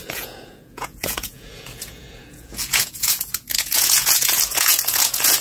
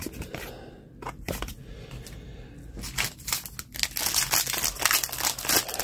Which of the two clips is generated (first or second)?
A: first